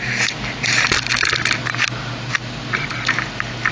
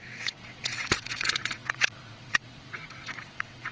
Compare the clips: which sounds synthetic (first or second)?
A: second